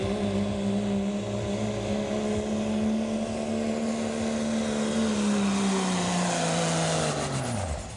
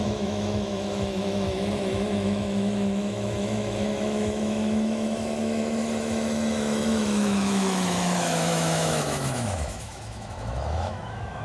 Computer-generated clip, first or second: second